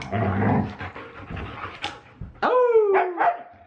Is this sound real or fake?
real